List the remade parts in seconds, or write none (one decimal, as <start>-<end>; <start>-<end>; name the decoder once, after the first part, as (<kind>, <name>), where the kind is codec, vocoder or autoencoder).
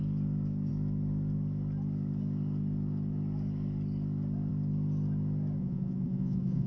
5.6-6.7 (vocoder, Vocos)